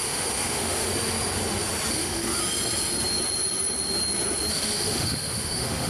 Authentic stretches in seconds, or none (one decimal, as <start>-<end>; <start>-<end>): 0.9-1.9; 2.4-4.5